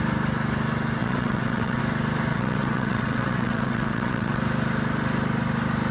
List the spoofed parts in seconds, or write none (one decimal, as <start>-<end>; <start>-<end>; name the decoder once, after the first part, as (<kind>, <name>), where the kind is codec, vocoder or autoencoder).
1.0-1.8 (vocoder, WaveNeXt); 2.3-4.4